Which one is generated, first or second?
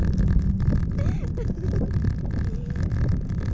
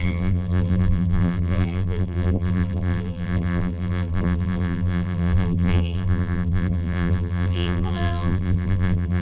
second